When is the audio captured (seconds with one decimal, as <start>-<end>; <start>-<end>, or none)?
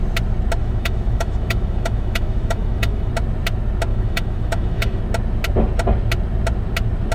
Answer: 0.0-0.6; 3.1-3.9; 5.0-7.1